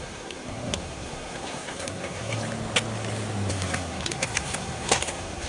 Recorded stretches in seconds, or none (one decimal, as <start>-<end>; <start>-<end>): 2.4-3.5